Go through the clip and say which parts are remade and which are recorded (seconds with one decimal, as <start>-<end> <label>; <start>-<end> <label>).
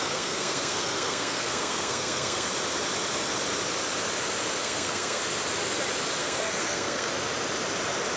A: 0.0-2.5 remade; 2.5-4.6 recorded; 4.6-5.2 remade; 5.2-6.2 recorded; 6.2-7.1 remade; 7.1-8.2 recorded